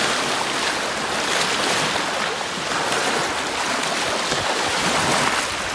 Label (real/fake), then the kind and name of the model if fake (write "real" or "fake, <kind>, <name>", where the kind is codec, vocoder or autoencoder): real